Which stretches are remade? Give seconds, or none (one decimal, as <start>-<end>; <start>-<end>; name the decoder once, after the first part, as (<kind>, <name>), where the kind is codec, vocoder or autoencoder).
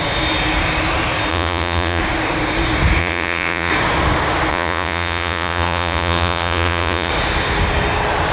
1.3-2.0 (vocoder, Vocos); 3.0-3.7; 4.5-7.1